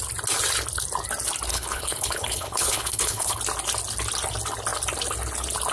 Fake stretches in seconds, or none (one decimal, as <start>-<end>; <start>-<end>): 1.5-3.4